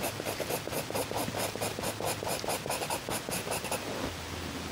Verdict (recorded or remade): recorded